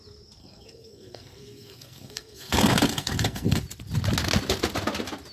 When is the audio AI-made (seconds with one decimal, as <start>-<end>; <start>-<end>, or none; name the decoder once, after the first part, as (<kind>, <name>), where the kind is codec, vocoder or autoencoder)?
0.4-3.6 (codec, SNAC)